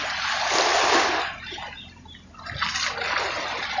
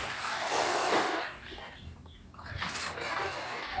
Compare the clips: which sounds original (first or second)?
first